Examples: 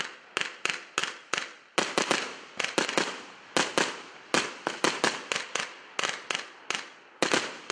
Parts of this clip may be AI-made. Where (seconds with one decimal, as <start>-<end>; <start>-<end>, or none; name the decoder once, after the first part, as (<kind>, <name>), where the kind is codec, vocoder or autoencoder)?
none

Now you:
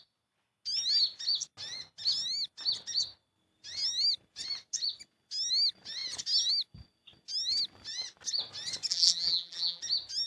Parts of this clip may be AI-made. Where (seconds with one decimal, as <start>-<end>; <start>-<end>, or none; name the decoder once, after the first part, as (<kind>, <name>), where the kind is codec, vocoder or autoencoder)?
8.9-9.8 (vocoder, BigVGAN v2)

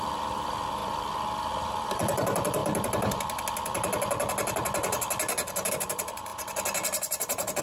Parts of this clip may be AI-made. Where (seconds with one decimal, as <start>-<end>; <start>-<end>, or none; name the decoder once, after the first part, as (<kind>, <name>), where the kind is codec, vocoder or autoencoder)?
0.0-0.8 (vocoder, BigVGAN v2); 1.4-2.6; 5.7-6.3

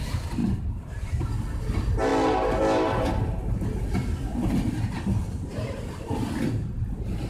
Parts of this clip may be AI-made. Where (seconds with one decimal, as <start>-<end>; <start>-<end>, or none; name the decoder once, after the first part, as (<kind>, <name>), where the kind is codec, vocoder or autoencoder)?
0.0-2.1 (vocoder, BigVGAN v2); 3.9-4.3; 6.4-7.3